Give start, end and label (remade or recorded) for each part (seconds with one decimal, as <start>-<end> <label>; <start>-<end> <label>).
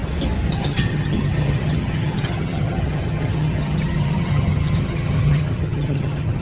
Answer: 0.0-0.5 recorded; 0.5-6.4 remade